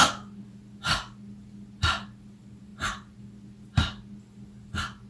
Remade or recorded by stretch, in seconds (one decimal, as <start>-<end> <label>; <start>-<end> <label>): 0.0-5.1 recorded